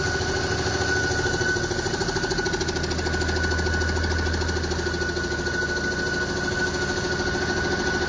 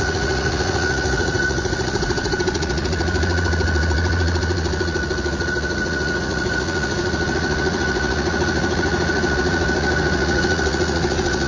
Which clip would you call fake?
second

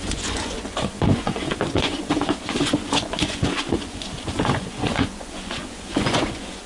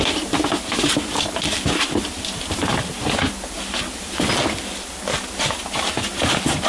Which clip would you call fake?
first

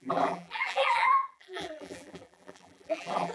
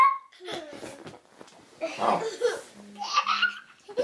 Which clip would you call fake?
first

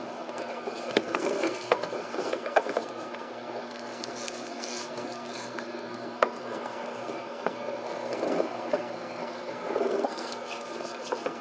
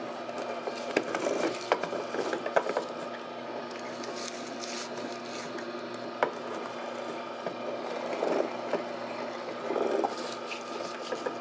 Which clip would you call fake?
first